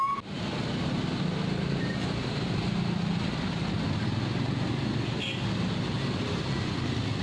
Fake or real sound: real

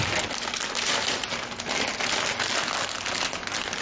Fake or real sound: real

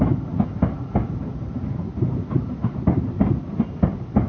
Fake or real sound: real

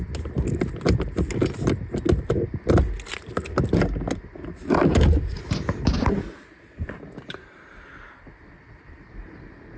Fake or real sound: real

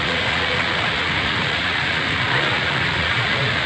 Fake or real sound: fake